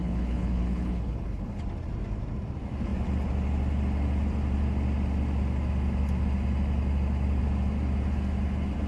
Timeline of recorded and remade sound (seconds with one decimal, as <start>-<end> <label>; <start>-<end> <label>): 0.0-1.6 remade; 1.6-8.9 recorded